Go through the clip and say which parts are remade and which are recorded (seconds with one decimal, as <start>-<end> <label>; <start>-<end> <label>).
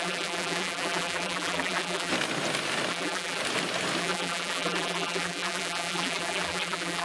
0.0-2.1 remade; 2.1-2.9 recorded; 2.9-3.4 remade; 3.4-4.0 recorded; 4.0-7.0 remade